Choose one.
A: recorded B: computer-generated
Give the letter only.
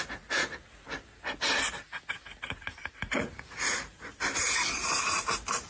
A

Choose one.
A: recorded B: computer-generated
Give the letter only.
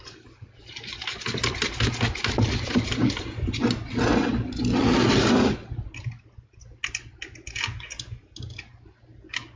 A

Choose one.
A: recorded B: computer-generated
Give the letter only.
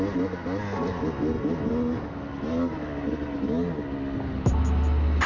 A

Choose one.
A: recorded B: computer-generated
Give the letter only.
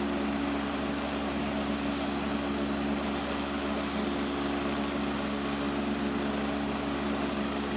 A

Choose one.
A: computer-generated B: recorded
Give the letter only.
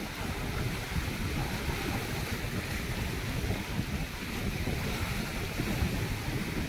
B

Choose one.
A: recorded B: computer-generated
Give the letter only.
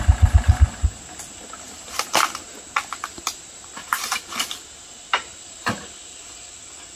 A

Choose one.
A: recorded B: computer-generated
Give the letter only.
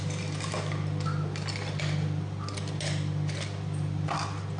A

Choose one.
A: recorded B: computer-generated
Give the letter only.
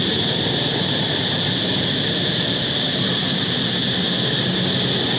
A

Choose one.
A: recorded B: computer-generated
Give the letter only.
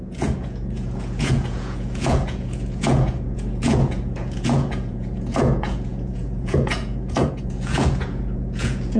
B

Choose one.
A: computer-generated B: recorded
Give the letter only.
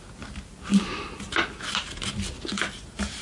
B